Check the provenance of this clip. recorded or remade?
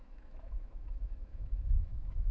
remade